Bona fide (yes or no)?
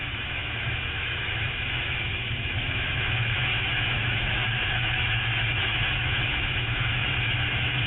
no